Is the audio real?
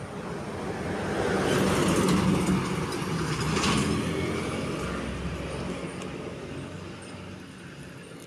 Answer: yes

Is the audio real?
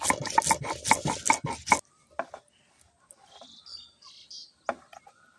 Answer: yes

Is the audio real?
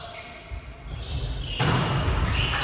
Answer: yes